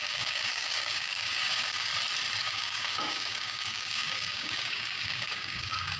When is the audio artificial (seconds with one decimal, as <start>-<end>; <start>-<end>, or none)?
0.0-1.9; 2.4-6.0